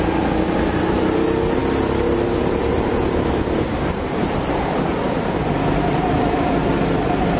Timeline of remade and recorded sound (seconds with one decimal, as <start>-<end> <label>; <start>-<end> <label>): 0.0-6.6 remade; 6.6-7.4 recorded